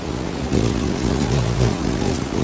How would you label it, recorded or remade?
remade